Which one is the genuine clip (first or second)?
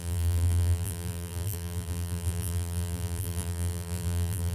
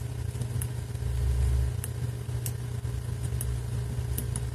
second